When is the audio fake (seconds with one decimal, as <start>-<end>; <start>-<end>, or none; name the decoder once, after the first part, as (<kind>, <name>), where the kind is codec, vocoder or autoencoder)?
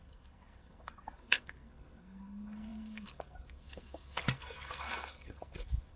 0.0-6.0 (codec, SNAC)